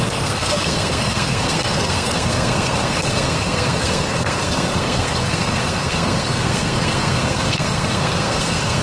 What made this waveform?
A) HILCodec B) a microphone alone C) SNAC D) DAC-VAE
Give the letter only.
C